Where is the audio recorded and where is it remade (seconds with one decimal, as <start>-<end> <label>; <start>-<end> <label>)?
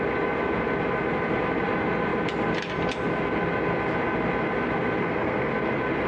0.0-5.0 recorded; 5.0-5.5 remade; 5.5-6.1 recorded